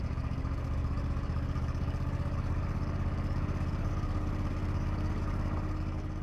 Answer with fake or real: fake